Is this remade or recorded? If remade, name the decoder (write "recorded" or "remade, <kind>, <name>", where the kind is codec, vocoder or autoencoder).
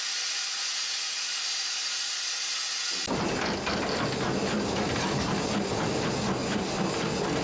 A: recorded